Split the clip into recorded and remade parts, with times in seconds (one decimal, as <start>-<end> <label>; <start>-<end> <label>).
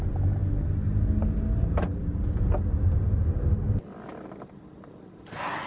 0.0-5.7 recorded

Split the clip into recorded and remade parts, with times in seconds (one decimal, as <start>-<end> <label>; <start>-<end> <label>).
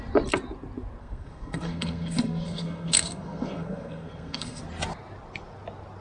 0.0-1.0 recorded; 1.0-4.6 remade; 4.6-6.0 recorded